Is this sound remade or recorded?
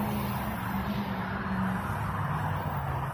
recorded